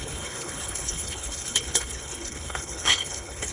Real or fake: fake